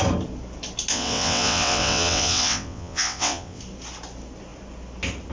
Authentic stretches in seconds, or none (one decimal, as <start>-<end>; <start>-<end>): 0.0-0.9; 3.6-5.3